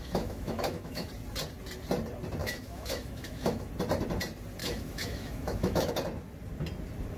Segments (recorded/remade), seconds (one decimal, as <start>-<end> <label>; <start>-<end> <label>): 0.0-1.1 remade; 1.1-2.4 recorded; 2.4-3.7 remade; 3.7-4.6 recorded; 4.6-5.9 remade; 5.9-7.2 recorded

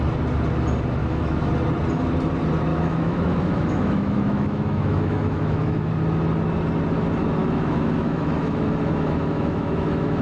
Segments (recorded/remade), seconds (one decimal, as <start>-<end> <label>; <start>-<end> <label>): 0.0-1.0 recorded; 1.0-1.5 remade; 1.5-2.7 recorded; 2.7-5.9 remade; 5.9-7.4 recorded; 7.4-10.2 remade

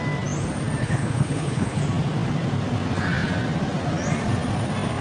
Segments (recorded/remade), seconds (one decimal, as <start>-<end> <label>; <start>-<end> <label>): 0.0-0.8 recorded; 0.8-1.8 remade; 1.8-5.0 recorded

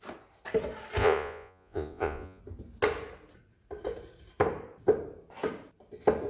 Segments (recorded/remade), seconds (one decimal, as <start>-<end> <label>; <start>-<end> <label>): 0.0-1.0 recorded; 1.0-2.4 remade; 2.4-6.3 recorded

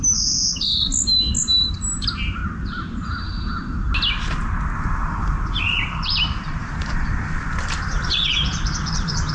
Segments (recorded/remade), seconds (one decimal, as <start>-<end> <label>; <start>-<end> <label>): 0.0-0.9 remade; 0.9-1.4 recorded; 1.4-2.4 remade; 2.4-5.6 recorded; 5.6-9.3 remade

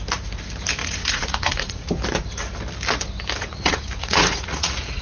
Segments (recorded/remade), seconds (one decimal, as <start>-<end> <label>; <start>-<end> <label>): 0.0-0.8 recorded; 0.8-1.9 remade; 1.9-3.4 recorded; 3.4-5.0 remade

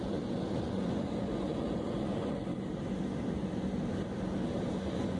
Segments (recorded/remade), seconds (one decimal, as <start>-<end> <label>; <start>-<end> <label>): 0.0-2.5 remade; 2.5-4.7 recorded; 4.7-5.2 remade

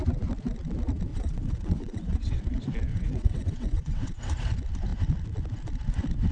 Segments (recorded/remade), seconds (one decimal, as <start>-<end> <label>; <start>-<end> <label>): 0.0-1.1 recorded; 1.1-2.4 remade; 2.4-2.9 recorded; 2.9-4.3 remade; 4.3-6.3 recorded